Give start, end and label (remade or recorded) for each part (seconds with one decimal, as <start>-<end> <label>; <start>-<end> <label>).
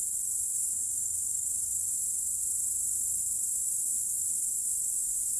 0.0-1.7 remade; 1.7-3.8 recorded; 3.8-5.4 remade